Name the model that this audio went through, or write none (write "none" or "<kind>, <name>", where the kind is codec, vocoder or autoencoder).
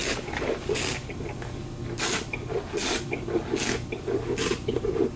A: codec, DAC